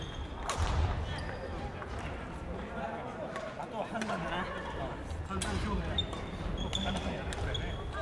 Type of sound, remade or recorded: recorded